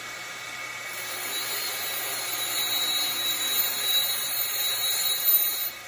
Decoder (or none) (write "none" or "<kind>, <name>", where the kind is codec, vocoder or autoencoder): vocoder, BigVGAN v2